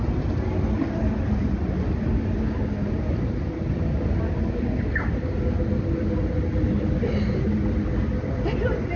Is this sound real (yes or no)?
yes